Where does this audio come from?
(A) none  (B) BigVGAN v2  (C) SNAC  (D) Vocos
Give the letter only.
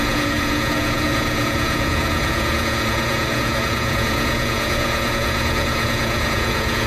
D